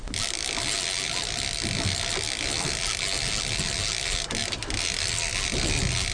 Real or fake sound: real